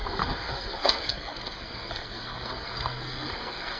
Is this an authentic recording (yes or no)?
no